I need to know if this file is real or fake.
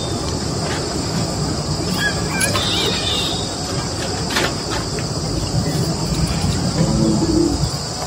real